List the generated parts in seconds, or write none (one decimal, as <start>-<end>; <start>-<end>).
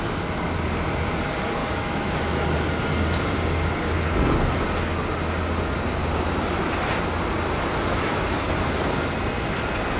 1.6-2.1